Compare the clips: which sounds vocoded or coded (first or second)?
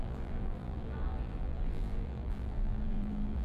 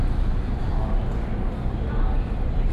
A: first